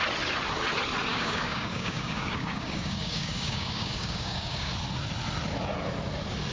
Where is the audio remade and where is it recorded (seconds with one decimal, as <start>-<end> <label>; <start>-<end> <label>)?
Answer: 0.0-1.1 recorded; 1.1-4.7 remade; 4.7-6.5 recorded